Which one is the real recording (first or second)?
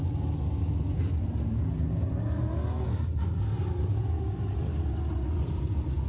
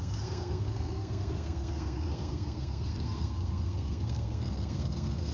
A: first